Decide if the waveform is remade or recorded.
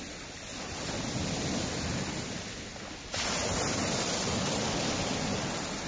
recorded